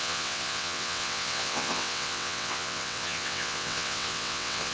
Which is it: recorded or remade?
remade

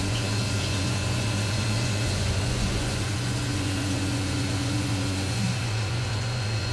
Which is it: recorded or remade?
remade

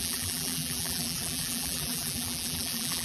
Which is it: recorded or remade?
remade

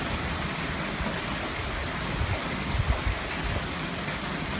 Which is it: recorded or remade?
recorded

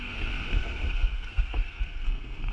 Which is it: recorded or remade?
remade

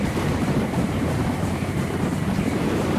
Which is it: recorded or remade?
remade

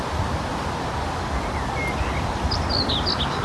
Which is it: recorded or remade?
recorded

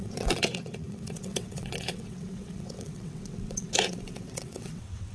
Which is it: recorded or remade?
remade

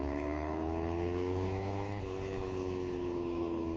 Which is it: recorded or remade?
remade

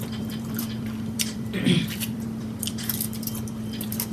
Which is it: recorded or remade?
remade